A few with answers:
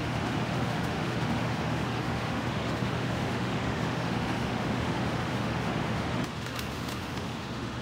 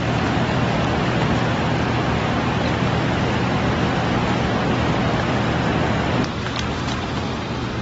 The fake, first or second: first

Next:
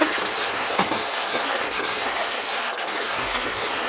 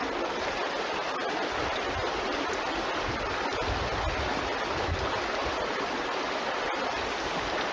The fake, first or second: first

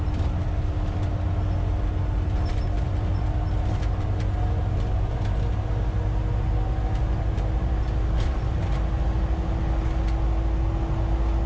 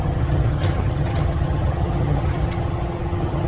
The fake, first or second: second